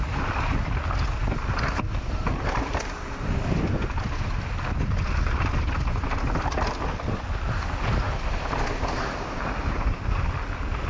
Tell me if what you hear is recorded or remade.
recorded